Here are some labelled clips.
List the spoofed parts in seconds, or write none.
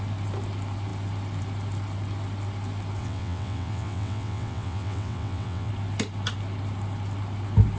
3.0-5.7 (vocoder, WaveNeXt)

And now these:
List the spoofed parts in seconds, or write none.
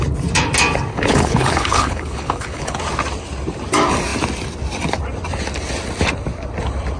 0.9-2.8 (codec, HILCodec)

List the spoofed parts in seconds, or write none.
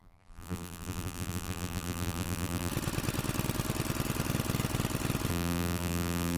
0.0-2.7 (vocoder, BigVGAN v2); 5.3-6.4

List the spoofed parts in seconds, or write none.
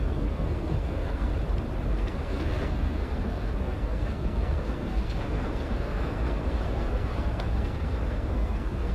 0.0-1.3 (codec, SNAC); 1.9-8.9